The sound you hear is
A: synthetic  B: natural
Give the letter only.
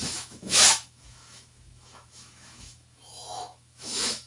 A